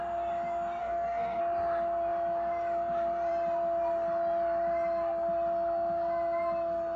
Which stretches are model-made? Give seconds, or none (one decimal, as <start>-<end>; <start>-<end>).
0.8-1.4